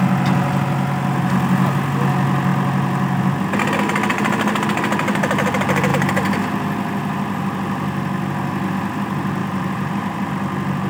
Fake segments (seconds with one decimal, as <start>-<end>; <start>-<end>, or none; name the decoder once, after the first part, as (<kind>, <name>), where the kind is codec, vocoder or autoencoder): 9.4-10.3 (vocoder, BigVGAN v2)